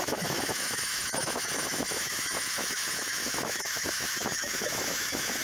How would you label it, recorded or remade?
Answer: remade